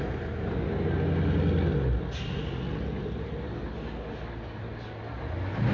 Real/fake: real